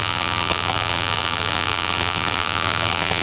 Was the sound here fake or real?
fake